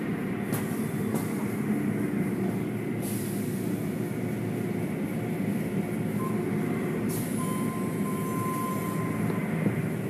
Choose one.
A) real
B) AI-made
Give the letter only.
A